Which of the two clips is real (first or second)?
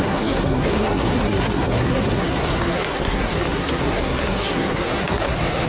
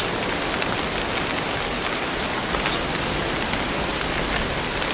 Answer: second